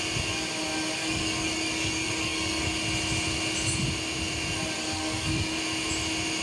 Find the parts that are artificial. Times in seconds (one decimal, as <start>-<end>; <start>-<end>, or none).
1.0-2.7; 4.8-5.6